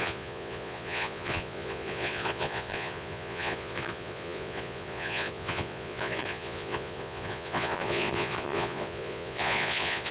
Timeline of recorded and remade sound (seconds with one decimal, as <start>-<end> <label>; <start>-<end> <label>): 0.0-10.1 remade